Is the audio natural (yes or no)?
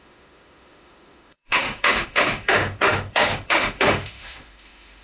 no